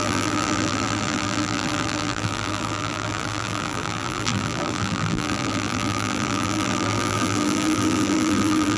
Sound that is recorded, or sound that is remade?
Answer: remade